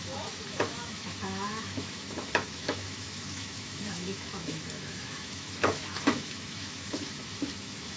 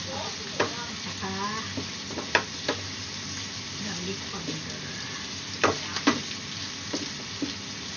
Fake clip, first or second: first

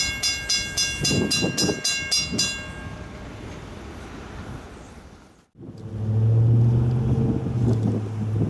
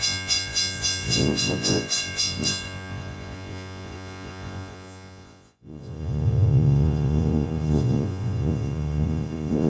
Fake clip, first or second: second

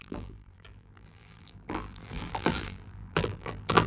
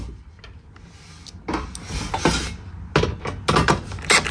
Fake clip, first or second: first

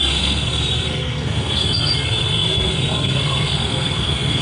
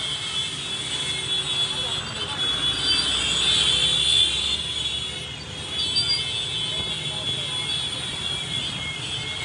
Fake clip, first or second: first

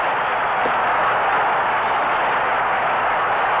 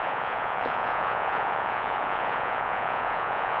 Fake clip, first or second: second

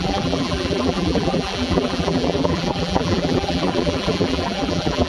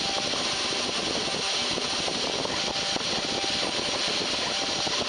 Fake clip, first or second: first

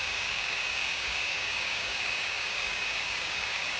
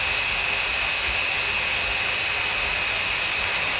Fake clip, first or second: first